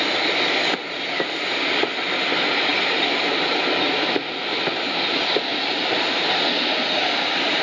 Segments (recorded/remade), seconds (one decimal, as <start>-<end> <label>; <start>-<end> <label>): 0.0-7.6 recorded